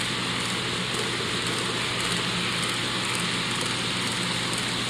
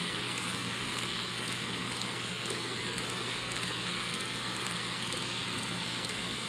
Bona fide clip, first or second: first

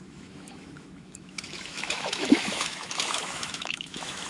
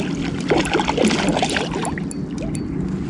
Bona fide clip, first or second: second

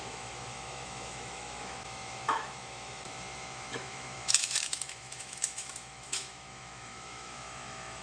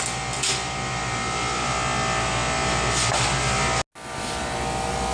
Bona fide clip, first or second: second